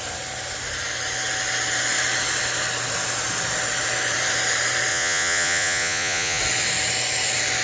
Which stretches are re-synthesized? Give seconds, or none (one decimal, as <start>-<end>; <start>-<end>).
4.9-6.4